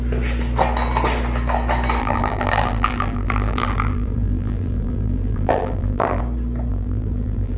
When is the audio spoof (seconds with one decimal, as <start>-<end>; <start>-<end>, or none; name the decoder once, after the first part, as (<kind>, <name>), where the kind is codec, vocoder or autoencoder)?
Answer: 2.0-6.2 (vocoder, BigVGAN v2); 6.7-7.6